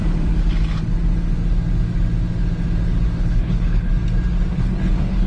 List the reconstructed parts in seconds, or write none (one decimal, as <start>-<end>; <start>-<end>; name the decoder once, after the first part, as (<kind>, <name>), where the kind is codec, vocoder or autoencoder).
3.2-3.9 (codec, HILCodec); 4.5-5.3